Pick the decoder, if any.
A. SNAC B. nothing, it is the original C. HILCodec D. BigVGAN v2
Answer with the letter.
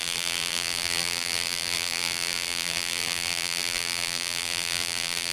D